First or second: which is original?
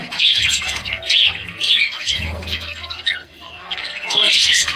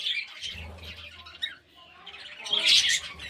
second